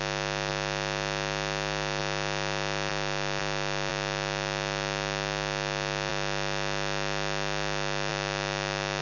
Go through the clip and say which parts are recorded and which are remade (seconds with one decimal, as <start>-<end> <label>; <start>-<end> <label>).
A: 0.0-9.0 recorded